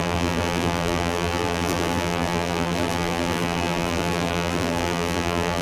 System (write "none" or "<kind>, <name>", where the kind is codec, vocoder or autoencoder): vocoder, BigVGAN v2